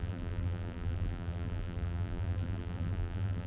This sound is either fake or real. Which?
fake